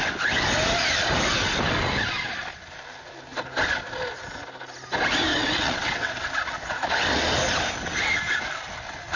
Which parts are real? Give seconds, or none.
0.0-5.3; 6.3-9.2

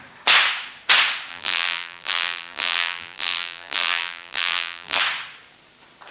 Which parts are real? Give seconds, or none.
0.0-1.3; 5.0-6.1

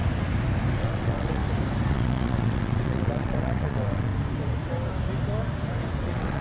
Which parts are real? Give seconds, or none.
0.0-0.8; 1.4-1.9; 4.1-6.0

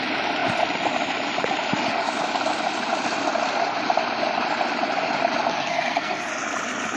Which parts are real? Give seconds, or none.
0.0-5.5; 6.3-7.0

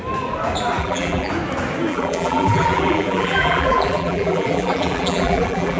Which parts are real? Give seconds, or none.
0.0-0.8; 1.3-1.9

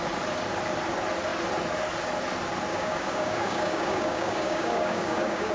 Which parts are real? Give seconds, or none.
0.0-2.7

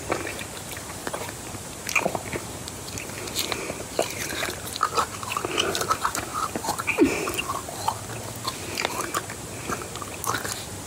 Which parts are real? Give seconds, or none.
0.0-1.0; 4.5-6.3; 7.1-10.9